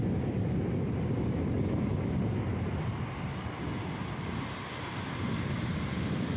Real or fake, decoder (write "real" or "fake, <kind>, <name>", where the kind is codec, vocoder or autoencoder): real